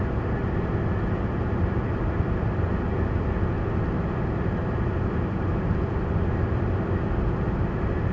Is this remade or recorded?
recorded